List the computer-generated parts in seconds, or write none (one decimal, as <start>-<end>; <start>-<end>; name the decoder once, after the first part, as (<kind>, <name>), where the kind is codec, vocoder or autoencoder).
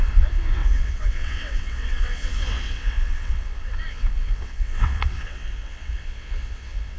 0.0-7.0 (vocoder, WaveNeXt)